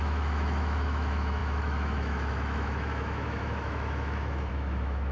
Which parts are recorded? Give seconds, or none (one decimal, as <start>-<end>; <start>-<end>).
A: none